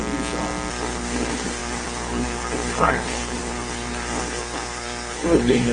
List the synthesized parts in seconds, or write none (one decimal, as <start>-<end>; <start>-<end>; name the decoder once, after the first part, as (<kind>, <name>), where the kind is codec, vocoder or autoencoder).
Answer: 0.7-5.7 (codec, SNAC)